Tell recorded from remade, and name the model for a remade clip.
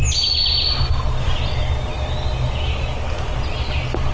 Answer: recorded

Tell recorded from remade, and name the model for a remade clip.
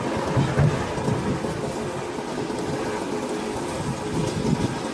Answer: recorded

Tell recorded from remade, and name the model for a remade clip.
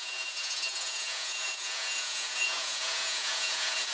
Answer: remade, vocoder, Vocos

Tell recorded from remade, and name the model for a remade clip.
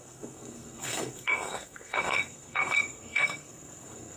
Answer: remade, codec, SNAC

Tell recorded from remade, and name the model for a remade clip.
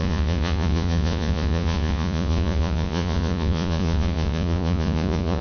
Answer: remade, vocoder, Vocos